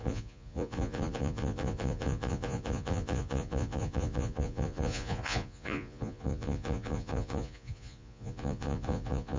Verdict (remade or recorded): remade